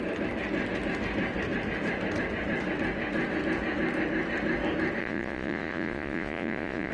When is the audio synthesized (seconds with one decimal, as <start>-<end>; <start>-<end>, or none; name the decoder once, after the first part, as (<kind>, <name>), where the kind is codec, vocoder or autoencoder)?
5.0-6.9 (vocoder, Vocos)